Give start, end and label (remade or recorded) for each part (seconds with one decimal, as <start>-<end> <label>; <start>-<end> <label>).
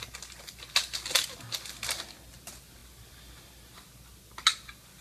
0.0-5.0 recorded